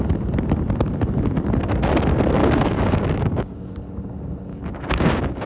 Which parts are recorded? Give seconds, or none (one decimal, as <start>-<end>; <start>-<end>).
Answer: 0.0-2.4; 3.7-4.5